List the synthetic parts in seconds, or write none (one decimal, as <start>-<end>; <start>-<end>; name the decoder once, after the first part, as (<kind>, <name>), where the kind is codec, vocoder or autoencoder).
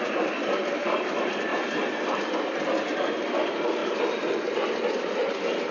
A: 0.0-1.5 (vocoder, BigVGAN v2); 3.2-5.7